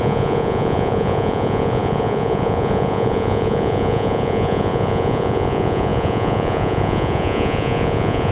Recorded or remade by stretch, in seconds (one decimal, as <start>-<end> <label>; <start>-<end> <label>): 0.0-8.3 remade

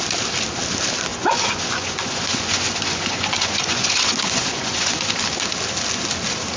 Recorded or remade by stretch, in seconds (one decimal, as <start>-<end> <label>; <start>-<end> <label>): 0.0-1.1 recorded; 1.1-5.1 remade; 5.1-6.6 recorded

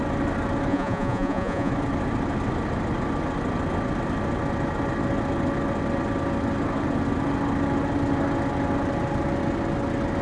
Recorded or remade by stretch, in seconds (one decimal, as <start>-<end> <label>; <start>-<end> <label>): 0.0-0.7 recorded; 0.7-1.7 remade; 1.7-10.2 recorded

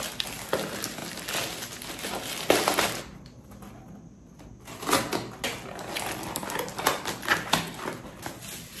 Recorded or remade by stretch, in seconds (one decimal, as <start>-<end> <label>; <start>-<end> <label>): 0.0-8.8 recorded

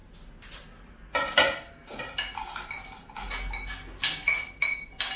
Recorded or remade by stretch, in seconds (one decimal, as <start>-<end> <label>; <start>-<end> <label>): 0.0-5.2 recorded